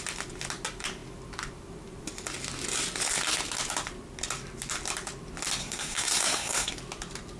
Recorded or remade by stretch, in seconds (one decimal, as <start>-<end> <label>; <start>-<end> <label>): 0.0-5.6 recorded; 5.6-6.8 remade; 6.8-7.4 recorded